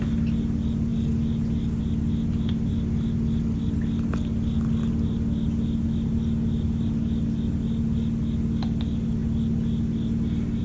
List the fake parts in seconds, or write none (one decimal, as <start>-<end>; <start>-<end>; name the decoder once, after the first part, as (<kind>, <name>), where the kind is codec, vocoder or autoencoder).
none